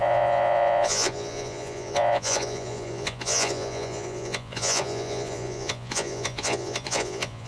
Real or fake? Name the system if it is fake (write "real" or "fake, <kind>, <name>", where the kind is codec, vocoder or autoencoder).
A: fake, vocoder, Vocos